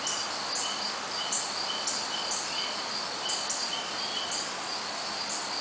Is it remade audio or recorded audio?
recorded